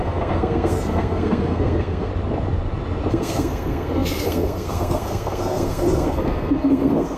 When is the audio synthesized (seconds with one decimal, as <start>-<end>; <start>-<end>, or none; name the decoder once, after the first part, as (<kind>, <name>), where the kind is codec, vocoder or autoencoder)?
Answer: 0.0-2.1 (codec, SNAC); 3.1-7.2